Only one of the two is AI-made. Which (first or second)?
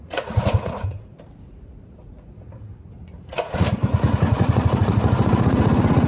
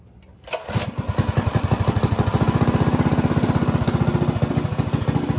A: first